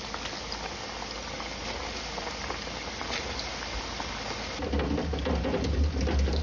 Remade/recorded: recorded